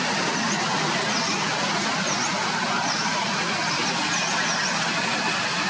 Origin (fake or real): real